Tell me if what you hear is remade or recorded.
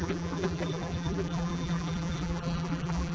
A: remade